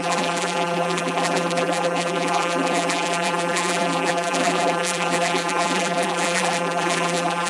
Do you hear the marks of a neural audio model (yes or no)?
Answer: yes